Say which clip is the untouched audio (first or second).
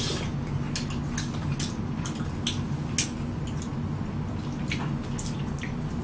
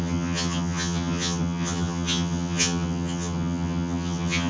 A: first